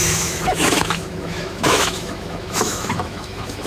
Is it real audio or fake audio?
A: fake